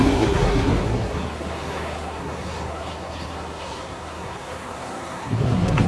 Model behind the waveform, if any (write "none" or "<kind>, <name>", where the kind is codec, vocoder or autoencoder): codec, SNAC